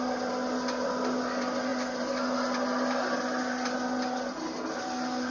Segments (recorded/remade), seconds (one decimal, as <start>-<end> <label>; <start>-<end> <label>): 0.0-5.3 recorded